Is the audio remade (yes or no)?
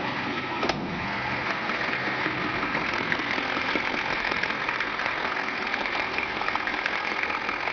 yes